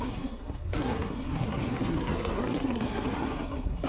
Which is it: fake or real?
fake